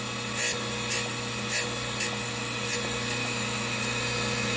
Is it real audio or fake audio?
real